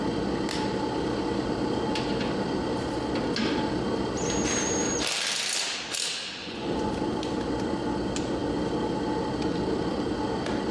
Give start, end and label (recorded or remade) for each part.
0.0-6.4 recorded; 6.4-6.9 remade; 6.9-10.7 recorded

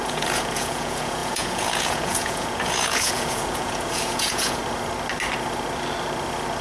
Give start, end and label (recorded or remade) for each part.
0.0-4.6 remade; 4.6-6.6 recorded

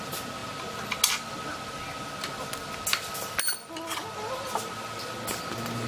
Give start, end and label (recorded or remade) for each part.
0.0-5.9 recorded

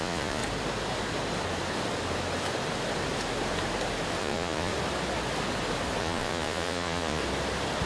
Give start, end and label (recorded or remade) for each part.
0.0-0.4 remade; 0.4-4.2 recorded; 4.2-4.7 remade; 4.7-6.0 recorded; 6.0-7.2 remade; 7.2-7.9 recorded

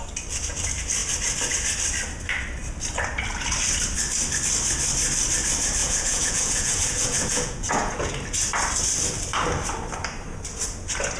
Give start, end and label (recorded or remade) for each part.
0.0-5.8 recorded; 5.8-8.1 remade; 8.1-11.2 recorded